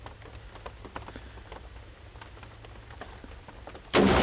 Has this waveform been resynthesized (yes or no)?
no